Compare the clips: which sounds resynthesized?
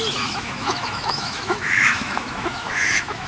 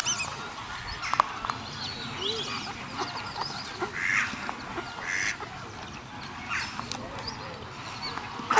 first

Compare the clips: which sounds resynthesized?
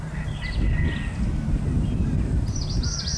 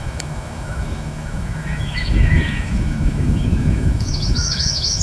second